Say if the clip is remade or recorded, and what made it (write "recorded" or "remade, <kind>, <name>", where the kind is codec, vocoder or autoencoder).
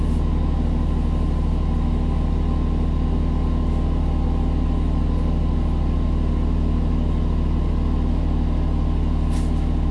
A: recorded